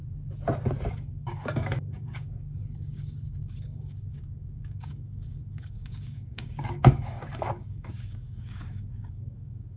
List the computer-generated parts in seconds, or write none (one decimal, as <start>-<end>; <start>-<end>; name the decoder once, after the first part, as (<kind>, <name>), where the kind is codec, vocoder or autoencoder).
0.9-9.8 (codec, DAC)